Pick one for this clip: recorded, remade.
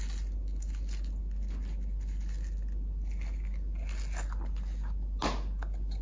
recorded